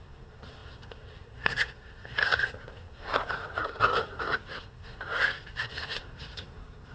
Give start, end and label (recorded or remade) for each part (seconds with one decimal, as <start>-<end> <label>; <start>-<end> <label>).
0.0-6.9 remade